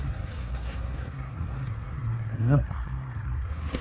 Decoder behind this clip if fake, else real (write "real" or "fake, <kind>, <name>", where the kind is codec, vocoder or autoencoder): fake, codec, SNAC